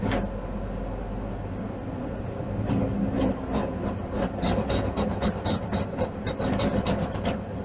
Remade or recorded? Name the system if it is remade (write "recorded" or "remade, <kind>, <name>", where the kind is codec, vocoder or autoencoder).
recorded